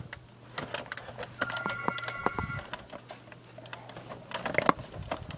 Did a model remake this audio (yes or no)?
no